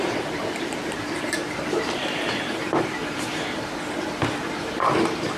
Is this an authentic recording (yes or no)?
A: no